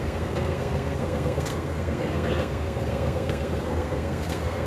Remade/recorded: remade